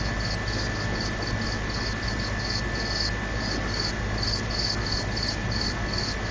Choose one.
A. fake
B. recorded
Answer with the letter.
B